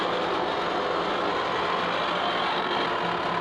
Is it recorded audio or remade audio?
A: recorded